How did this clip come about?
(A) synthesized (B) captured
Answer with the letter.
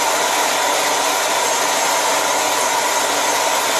B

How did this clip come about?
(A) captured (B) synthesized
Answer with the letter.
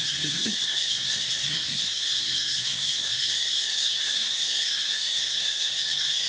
B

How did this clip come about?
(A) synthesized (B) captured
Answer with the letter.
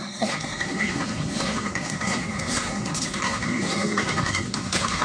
A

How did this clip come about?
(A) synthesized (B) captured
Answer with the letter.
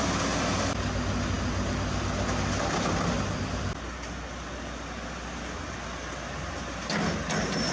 B